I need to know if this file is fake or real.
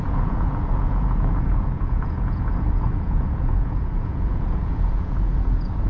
fake